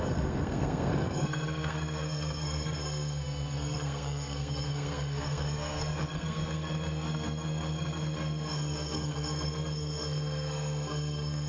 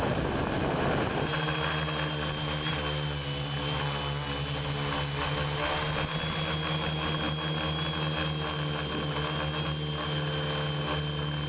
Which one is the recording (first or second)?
second